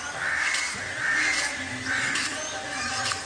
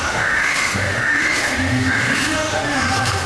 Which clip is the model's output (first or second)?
second